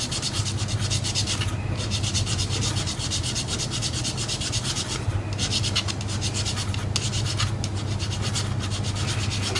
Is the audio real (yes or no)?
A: yes